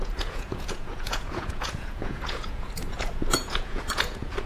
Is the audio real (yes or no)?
no